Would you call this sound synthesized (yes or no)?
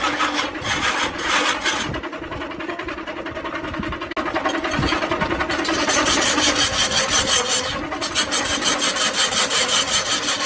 no